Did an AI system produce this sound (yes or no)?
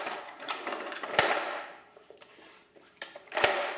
yes